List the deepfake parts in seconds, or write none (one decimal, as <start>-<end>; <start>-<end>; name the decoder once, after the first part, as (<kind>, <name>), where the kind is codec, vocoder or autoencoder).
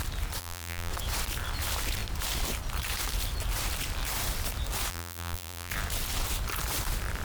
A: 0.4-0.9 (vocoder, BigVGAN v2); 4.9-5.7